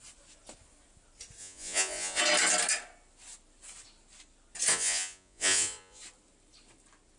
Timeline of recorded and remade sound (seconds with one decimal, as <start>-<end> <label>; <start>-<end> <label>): 0.0-1.4 recorded; 1.4-2.2 remade; 2.2-4.7 recorded; 4.7-6.0 remade; 6.0-7.2 recorded